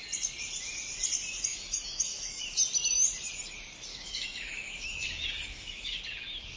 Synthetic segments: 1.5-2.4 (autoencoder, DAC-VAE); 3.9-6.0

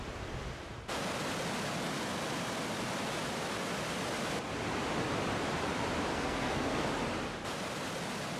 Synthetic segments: 6.1-6.9 (codec, SNAC)

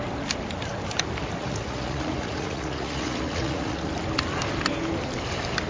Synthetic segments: 1.4-3.9 (vocoder, Vocos)

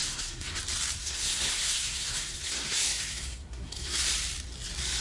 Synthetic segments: 0.0-0.6 (codec, SNAC); 1.0-4.0

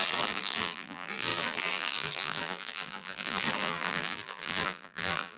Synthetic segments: 0.0-5.4 (vocoder, BigVGAN v2)

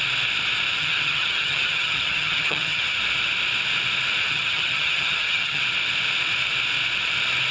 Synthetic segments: 0.8-3.0 (vocoder, HiFi-GAN); 4.2-5.6